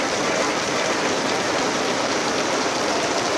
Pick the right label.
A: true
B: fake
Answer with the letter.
B